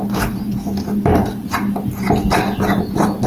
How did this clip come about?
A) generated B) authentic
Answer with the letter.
B